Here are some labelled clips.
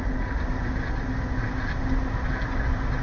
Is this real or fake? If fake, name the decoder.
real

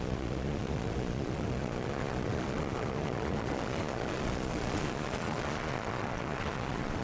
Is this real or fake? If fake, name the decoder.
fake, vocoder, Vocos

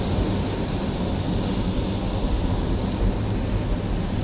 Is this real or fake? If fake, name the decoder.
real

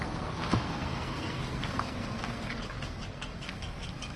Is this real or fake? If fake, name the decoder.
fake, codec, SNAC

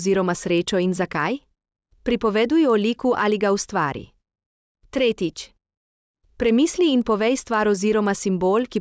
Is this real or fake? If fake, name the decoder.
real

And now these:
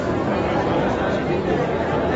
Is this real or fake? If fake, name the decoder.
real